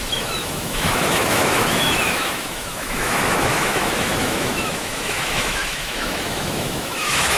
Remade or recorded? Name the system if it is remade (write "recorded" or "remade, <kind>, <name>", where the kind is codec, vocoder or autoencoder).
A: remade, autoencoder, DAC-VAE